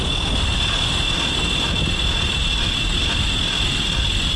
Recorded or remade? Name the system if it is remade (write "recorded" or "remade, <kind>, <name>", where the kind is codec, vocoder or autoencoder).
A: recorded